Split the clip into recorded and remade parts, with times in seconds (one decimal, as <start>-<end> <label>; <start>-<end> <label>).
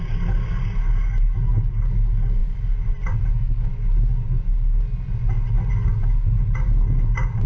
0.0-7.5 recorded